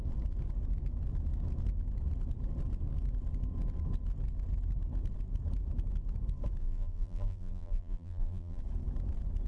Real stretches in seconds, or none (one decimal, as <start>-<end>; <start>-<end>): 0.0-6.6; 8.6-9.5